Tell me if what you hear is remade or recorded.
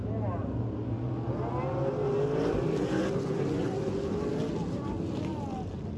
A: recorded